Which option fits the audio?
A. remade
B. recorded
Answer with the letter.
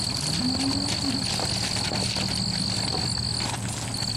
B